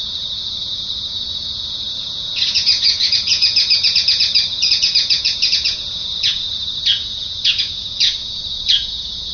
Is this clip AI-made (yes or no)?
yes